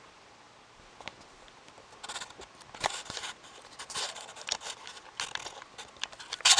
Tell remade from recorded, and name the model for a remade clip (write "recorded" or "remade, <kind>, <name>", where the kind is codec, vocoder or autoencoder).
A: recorded